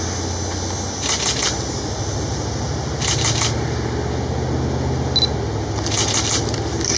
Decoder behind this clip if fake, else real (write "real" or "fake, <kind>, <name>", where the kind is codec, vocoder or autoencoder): real